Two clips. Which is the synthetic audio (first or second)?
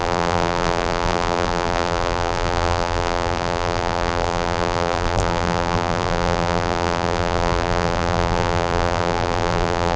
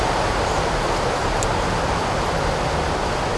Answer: first